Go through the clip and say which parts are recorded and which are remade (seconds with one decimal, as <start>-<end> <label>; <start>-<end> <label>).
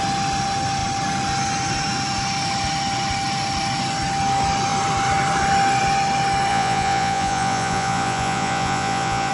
0.0-6.5 recorded; 6.5-9.3 remade